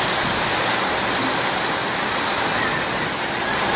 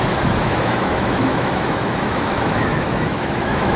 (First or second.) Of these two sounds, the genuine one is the first